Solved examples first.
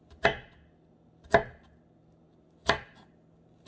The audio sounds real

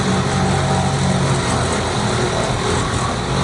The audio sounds real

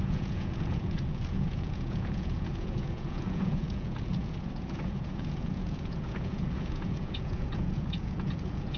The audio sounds fake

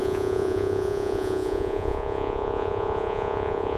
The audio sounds fake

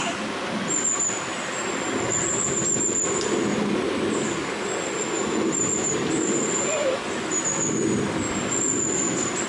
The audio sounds real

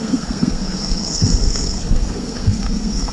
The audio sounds fake